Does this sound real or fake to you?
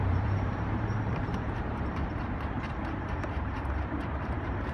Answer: fake